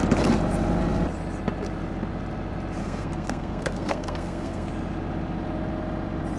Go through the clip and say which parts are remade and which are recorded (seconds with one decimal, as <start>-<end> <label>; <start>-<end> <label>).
0.0-2.8 recorded; 2.8-4.7 remade; 4.7-6.4 recorded